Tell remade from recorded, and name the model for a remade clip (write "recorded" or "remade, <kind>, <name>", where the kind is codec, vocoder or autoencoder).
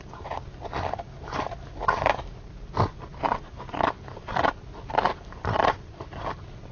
recorded